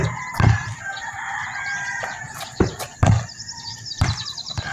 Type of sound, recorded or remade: recorded